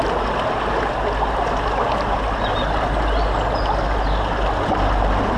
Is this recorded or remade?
recorded